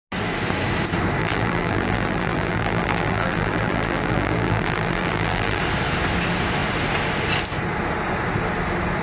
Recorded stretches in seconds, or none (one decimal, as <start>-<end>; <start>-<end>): 0.0-1.2; 5.6-9.0